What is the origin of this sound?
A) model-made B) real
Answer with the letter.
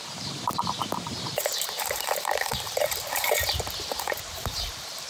A